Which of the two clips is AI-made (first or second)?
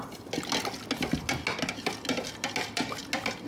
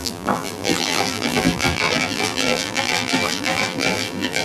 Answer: second